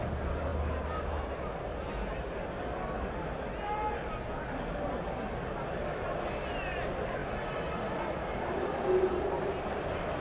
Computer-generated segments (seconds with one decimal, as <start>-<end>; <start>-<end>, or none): none